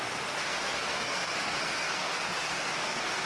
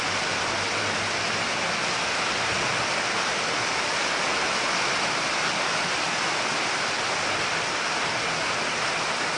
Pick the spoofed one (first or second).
first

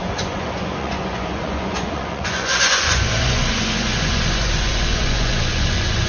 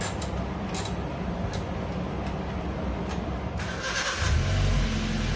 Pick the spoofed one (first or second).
first